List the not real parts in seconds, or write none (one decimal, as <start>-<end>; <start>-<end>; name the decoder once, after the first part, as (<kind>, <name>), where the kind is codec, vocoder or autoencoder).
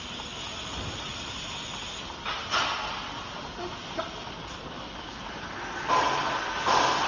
none